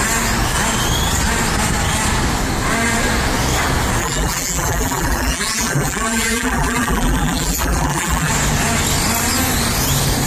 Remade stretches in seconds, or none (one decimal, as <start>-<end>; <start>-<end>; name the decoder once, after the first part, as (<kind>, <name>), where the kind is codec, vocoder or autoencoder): 4.0-8.3 (vocoder, BigVGAN v2)